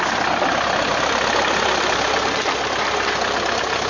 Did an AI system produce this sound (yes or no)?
no